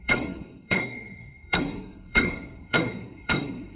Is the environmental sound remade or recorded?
remade